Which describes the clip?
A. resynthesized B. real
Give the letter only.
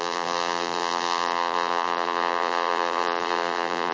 A